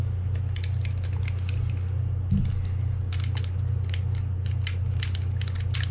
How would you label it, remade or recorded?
recorded